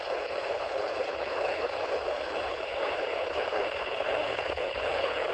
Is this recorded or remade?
remade